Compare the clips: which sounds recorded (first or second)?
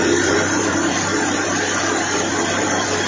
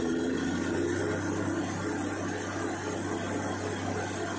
second